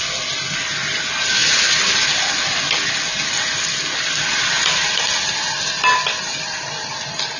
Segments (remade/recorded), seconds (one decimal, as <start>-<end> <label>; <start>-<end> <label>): 0.0-7.4 recorded